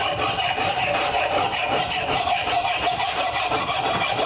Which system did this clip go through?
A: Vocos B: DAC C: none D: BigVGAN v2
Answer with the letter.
D